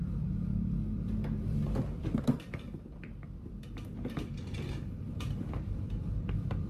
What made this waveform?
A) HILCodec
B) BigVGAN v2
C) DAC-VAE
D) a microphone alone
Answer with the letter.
B